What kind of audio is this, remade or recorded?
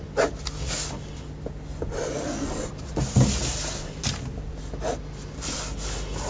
recorded